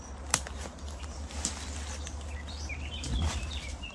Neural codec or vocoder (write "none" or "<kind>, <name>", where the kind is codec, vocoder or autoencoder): none